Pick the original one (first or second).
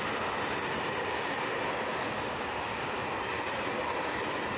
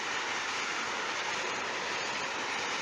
first